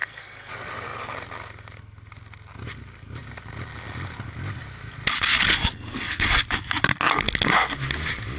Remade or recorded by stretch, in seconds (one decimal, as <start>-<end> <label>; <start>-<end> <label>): 0.0-0.5 remade; 0.5-5.6 recorded; 5.6-6.4 remade; 6.4-8.4 recorded